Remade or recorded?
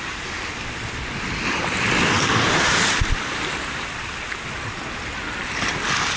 recorded